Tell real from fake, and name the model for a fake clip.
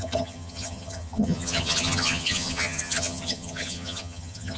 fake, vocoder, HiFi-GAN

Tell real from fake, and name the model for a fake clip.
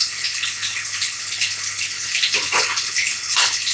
fake, codec, HILCodec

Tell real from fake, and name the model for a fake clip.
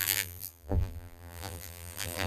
fake, vocoder, BigVGAN v2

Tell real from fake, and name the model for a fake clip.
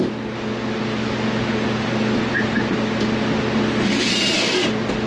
real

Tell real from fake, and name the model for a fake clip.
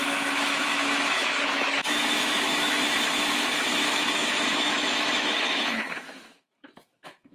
fake, autoencoder, DAC-VAE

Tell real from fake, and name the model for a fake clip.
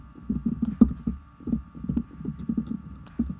real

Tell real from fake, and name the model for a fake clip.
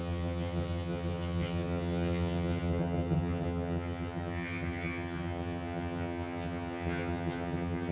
fake, vocoder, HiFi-GAN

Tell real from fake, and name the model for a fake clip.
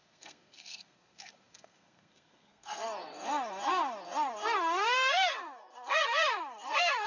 fake, codec, SNAC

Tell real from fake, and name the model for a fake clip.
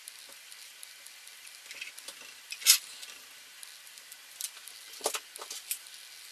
real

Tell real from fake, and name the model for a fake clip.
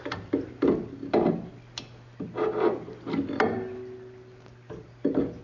real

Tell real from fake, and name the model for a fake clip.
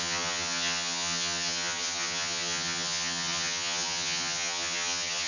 fake, vocoder, HiFi-GAN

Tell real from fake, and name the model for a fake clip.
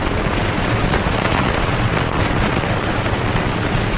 fake, vocoder, Vocos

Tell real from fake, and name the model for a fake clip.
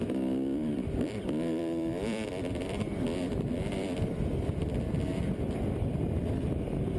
fake, vocoder, BigVGAN v2